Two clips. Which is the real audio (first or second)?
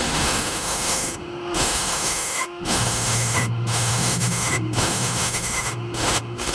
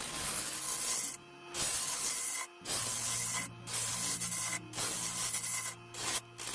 second